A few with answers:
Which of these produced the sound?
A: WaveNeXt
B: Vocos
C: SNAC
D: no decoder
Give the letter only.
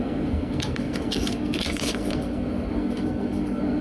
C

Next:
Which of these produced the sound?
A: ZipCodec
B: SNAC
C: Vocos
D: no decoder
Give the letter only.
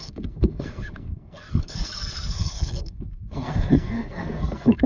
B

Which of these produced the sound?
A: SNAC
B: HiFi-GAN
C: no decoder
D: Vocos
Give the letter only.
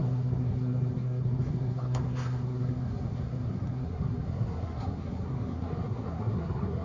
A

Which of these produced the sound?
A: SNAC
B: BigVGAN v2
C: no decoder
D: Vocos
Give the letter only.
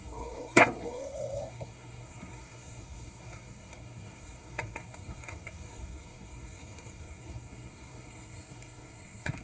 A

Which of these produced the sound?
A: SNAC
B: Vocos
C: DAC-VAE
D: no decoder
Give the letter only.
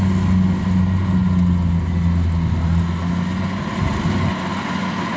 D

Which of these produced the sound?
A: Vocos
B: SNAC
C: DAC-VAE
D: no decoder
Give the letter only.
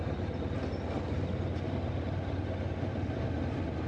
D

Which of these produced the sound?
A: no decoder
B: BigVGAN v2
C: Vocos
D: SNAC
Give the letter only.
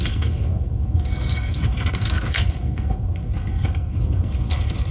D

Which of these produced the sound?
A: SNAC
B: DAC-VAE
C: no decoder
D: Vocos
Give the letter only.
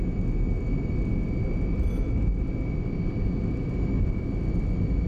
C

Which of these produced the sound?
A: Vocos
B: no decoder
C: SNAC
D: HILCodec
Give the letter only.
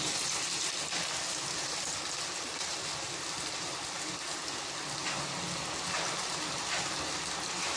B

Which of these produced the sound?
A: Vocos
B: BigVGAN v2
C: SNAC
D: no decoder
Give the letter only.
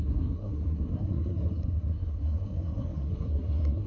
C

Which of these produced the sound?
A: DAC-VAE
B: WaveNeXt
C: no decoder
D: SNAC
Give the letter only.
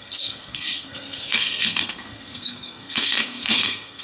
D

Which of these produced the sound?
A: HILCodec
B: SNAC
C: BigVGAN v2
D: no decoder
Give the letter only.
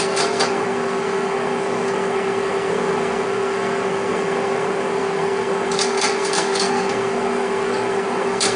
B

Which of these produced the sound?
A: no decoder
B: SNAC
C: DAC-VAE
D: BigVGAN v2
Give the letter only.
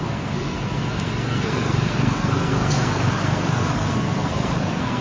B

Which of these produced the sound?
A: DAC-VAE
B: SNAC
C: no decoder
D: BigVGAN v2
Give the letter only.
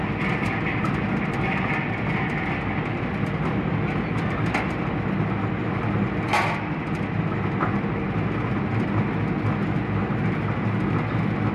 C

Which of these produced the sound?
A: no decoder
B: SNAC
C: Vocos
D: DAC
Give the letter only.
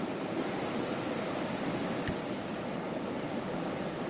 A